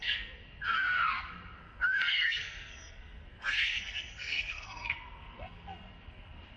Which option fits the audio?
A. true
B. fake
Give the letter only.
B